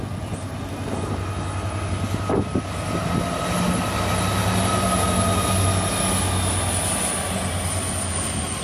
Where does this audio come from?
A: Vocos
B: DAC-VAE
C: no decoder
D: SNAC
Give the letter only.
C